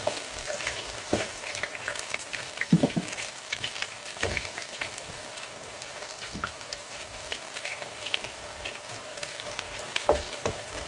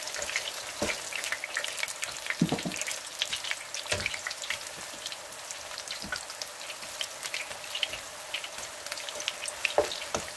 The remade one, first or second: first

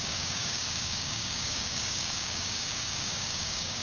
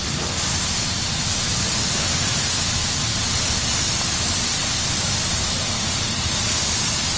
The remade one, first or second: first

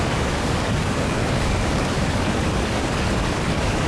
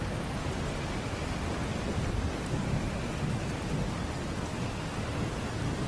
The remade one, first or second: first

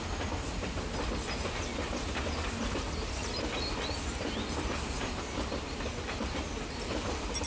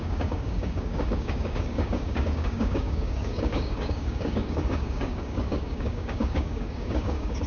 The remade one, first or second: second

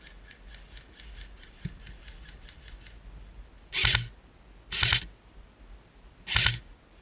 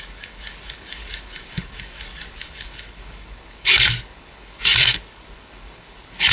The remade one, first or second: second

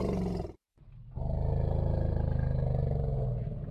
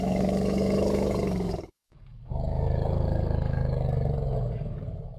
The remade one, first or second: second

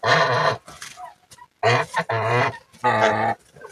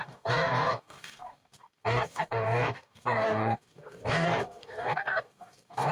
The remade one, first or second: second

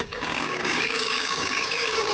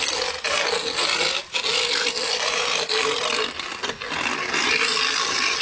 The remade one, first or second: first